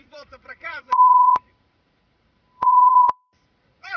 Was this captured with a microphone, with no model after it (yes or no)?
no